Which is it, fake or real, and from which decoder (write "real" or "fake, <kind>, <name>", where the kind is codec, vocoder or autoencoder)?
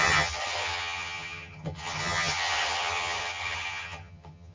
fake, vocoder, HiFi-GAN